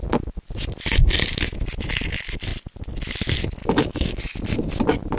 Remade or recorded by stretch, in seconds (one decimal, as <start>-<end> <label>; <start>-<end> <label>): 0.0-3.6 recorded; 3.6-4.2 remade; 4.2-5.2 recorded